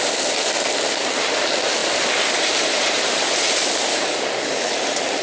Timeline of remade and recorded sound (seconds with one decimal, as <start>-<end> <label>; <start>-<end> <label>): 0.0-3.9 recorded; 3.9-4.6 remade; 4.6-5.2 recorded